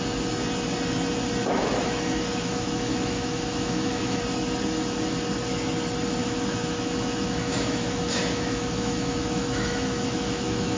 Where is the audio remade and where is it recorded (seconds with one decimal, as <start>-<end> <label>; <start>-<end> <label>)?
0.0-1.4 recorded; 1.4-4.2 remade; 4.2-6.2 recorded; 6.2-10.8 remade